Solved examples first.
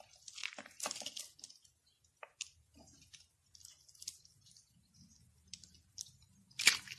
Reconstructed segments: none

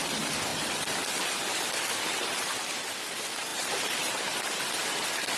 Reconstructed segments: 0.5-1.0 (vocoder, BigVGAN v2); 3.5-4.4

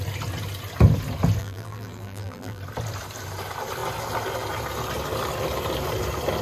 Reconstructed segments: 1.4-2.6 (vocoder, BigVGAN v2)